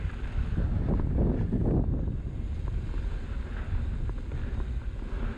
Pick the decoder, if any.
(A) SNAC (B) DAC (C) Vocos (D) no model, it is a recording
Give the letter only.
D